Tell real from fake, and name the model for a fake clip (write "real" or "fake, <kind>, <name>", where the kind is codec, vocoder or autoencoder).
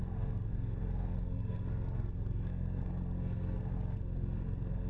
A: fake, codec, SNAC